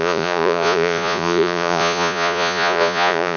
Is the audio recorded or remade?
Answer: remade